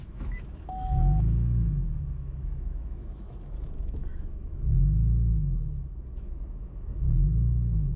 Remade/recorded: remade